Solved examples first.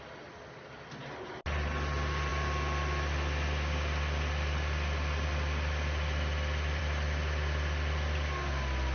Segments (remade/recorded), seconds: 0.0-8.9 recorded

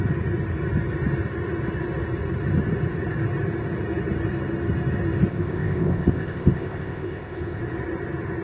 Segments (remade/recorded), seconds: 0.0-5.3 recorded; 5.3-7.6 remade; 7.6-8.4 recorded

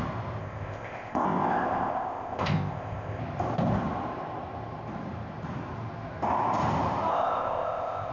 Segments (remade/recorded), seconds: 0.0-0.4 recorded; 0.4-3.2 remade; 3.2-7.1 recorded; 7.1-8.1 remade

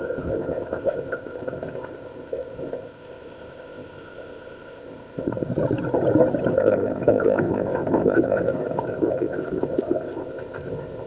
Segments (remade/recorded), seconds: 0.0-5.5 remade; 5.5-6.5 recorded; 6.5-11.1 remade

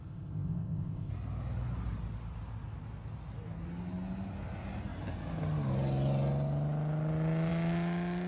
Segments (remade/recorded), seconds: 0.0-1.1 remade; 1.1-8.3 recorded

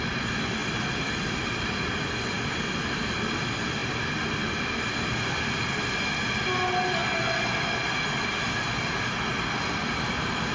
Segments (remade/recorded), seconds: 0.0-10.5 recorded